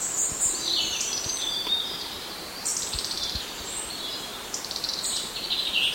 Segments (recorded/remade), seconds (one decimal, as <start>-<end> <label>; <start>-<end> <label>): 0.0-4.3 remade; 4.3-4.9 recorded; 4.9-5.9 remade